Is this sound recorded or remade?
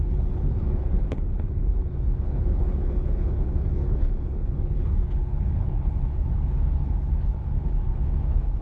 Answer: remade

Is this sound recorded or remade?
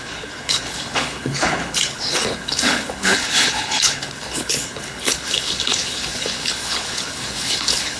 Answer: remade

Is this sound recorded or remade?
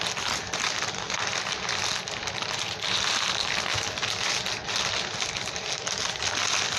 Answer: recorded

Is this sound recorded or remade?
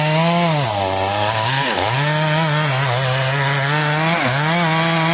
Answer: recorded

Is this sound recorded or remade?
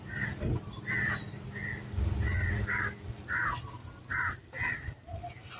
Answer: recorded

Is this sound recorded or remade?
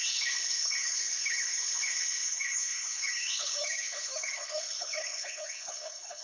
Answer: remade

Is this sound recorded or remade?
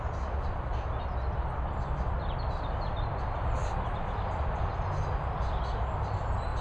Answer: recorded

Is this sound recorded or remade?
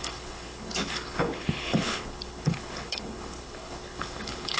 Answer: remade